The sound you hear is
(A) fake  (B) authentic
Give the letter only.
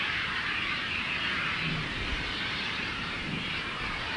A